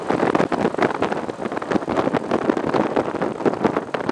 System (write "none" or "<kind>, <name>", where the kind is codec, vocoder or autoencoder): none